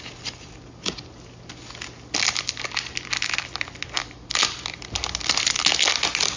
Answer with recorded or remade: recorded